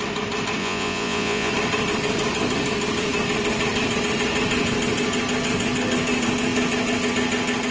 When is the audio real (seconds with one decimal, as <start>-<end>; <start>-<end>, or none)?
0.0-0.6; 1.5-7.7